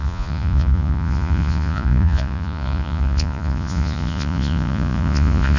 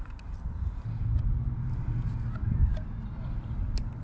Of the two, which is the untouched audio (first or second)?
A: second